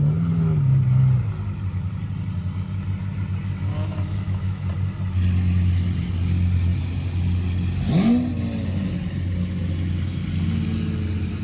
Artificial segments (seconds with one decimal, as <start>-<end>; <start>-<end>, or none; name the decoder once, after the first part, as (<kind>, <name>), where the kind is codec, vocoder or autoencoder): 3.7-4.7 (autoencoder, DAC-VAE)